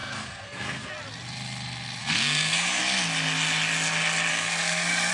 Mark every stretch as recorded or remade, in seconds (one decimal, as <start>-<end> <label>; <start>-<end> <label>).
0.0-0.9 remade; 0.9-2.0 recorded; 2.0-2.8 remade; 2.8-4.3 recorded; 4.3-5.1 remade